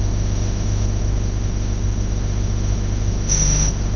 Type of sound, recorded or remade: remade